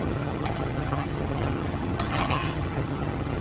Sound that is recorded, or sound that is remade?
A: remade